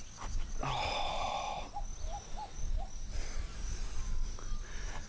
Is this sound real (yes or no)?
yes